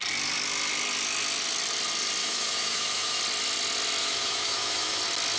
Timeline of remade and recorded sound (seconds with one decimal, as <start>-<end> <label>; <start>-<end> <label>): 0.0-2.2 recorded; 2.2-3.2 remade; 3.2-4.0 recorded; 4.0-5.0 remade; 5.0-5.4 recorded